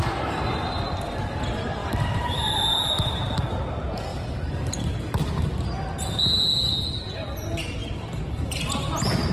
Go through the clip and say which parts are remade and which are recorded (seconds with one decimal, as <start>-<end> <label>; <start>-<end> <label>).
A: 0.0-1.8 recorded; 1.8-3.4 remade; 3.4-4.1 recorded; 4.1-5.1 remade; 5.1-7.8 recorded; 7.8-8.6 remade; 8.6-9.3 recorded